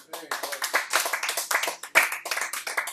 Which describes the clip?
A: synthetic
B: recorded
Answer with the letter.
B